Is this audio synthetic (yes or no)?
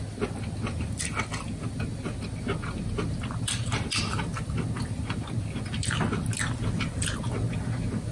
no